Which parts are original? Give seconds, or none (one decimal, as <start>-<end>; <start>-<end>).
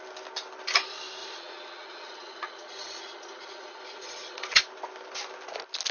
0.0-1.2; 4.6-5.9